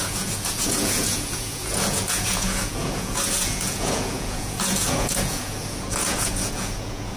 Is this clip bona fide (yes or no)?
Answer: no